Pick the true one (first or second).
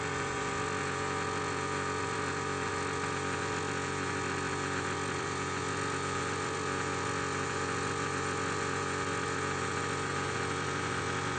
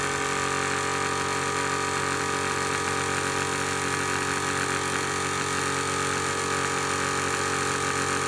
second